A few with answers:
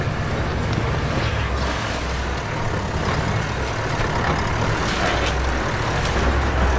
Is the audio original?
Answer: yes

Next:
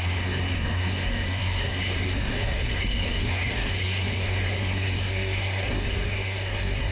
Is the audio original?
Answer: no